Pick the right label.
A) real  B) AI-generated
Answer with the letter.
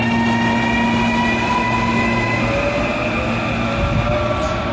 A